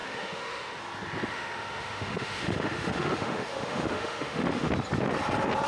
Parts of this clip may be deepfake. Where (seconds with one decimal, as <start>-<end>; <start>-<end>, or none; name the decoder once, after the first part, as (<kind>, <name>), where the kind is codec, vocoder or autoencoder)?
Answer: 0.0-0.8 (autoencoder, DAC-VAE); 1.3-4.7